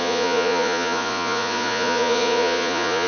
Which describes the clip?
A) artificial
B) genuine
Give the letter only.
A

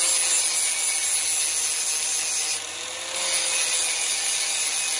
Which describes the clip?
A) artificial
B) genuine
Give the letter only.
B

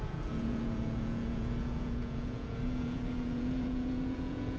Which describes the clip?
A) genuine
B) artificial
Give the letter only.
B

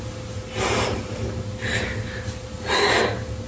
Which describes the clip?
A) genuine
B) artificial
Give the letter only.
A